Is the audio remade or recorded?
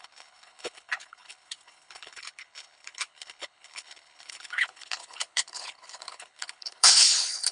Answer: remade